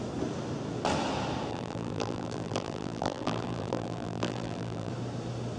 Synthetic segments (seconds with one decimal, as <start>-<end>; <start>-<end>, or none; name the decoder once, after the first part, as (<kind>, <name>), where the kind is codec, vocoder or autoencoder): 1.5-4.9 (vocoder, BigVGAN v2)